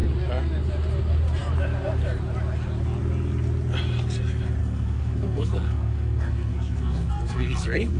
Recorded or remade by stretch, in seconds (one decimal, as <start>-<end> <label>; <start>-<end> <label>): 0.0-4.6 recorded; 4.6-8.0 remade